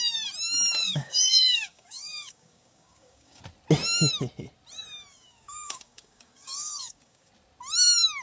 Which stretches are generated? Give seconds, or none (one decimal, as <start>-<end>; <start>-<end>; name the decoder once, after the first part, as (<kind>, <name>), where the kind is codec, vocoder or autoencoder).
0.8-3.4 (codec, DAC); 5.1-7.3

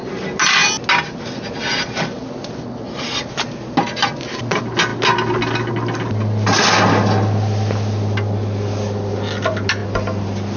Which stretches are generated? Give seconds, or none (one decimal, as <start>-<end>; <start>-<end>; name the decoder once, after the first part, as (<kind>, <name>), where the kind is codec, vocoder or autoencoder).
none

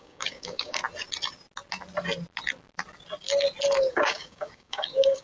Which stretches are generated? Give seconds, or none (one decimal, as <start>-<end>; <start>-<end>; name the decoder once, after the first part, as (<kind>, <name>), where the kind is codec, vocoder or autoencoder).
0.0-0.8 (codec, DAC); 3.9-5.2

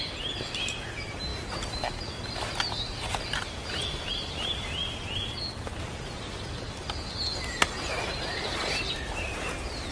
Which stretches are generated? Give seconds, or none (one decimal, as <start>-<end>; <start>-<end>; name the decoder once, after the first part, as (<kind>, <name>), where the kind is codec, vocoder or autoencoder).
none